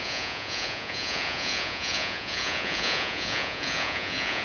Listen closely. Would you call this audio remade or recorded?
remade